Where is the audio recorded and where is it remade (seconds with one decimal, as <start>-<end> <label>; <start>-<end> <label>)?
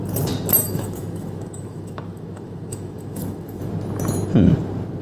0.0-0.6 recorded; 0.6-3.6 remade; 3.6-5.0 recorded